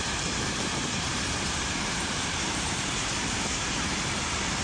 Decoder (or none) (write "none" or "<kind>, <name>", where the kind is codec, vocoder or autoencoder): vocoder, BigVGAN v2